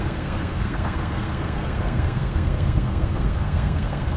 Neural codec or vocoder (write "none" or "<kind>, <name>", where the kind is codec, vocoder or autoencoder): codec, SNAC